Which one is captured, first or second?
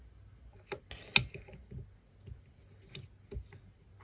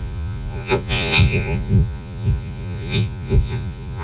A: first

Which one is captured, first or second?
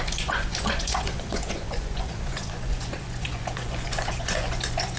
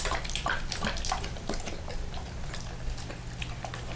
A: second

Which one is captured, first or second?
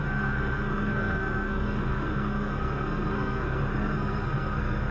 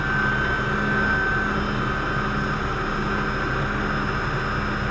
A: second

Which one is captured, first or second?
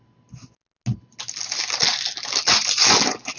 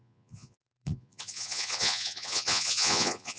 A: first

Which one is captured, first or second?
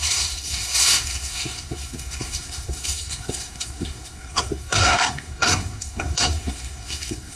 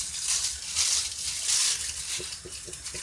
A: second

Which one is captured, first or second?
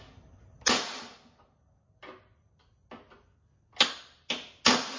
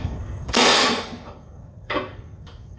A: first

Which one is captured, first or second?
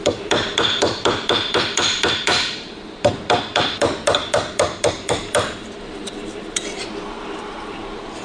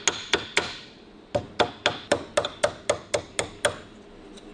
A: second